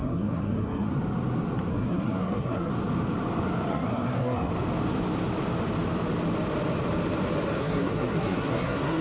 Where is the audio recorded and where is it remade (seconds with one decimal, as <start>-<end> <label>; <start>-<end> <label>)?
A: 0.0-0.9 remade; 0.9-1.7 recorded; 1.7-2.7 remade; 2.7-3.7 recorded; 3.7-4.5 remade; 4.5-7.6 recorded; 7.6-9.0 remade